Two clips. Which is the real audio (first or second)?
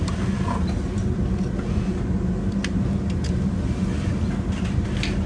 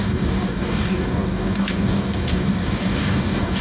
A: first